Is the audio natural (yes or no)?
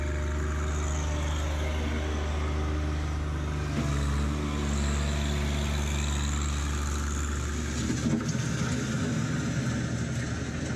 yes